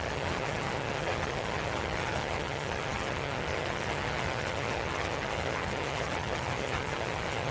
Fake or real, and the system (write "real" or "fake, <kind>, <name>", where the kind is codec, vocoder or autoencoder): fake, vocoder, HiFi-GAN